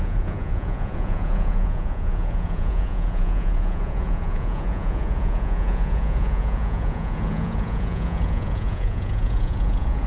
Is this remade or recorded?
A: remade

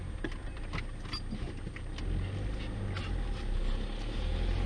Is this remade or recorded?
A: recorded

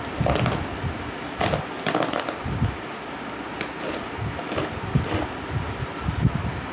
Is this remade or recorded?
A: recorded